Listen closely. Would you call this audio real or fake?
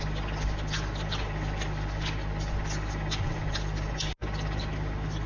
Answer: real